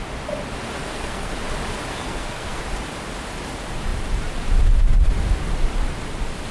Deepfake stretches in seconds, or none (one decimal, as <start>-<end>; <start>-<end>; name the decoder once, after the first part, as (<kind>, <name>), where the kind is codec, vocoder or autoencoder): 0.8-1.3 (codec, SNAC); 1.9-2.6